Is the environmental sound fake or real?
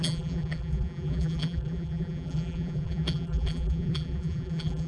fake